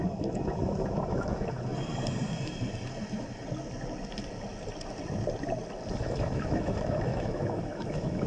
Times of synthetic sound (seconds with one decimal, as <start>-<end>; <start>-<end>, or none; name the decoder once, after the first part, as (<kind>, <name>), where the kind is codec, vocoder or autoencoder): 0.0-1.7 (autoencoder, DAC-VAE); 6.0-8.3